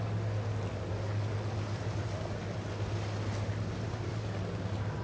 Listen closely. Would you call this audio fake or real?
real